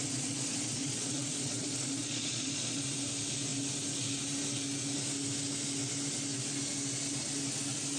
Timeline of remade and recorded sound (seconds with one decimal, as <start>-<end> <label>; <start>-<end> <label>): 0.0-2.8 remade; 2.8-8.0 recorded